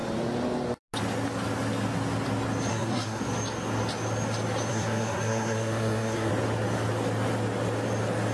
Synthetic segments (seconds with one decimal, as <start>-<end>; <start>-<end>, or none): 2.7-3.2; 4.7-6.3